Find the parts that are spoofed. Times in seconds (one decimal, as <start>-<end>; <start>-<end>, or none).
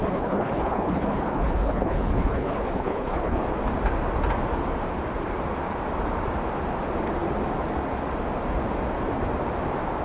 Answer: 0.0-3.4